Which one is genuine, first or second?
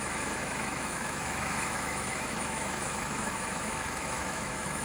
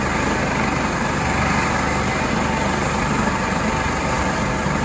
second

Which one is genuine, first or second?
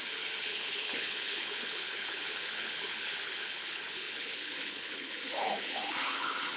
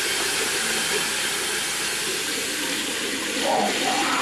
second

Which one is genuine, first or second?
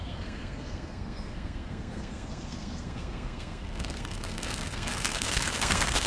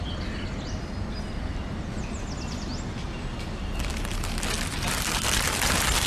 second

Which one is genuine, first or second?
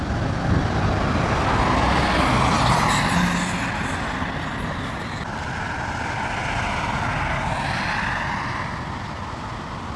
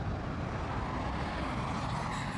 first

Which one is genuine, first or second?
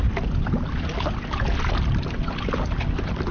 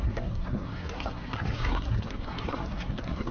first